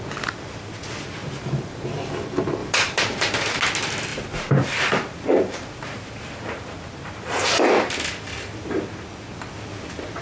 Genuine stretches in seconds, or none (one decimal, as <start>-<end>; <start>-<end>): 0.0-1.2; 1.9-2.6; 3.6-4.1; 7.1-10.2